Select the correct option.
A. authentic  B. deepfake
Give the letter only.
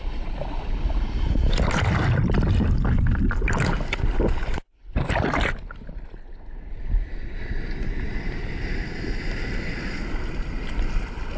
B